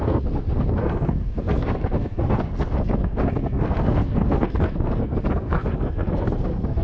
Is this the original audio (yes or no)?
no